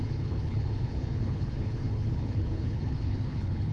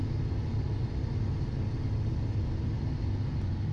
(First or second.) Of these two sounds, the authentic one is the second